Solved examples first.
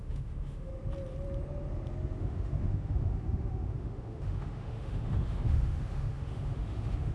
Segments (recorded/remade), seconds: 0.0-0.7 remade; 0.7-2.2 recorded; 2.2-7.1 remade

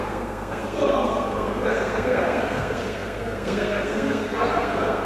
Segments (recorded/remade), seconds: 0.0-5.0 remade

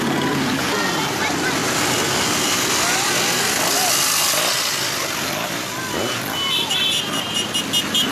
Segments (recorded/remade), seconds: 0.0-8.1 recorded

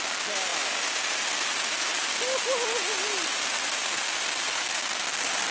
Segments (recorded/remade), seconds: 0.0-5.5 recorded

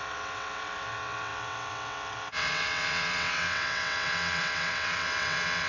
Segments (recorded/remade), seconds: 0.0-5.7 remade